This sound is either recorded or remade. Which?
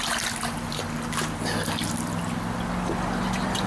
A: recorded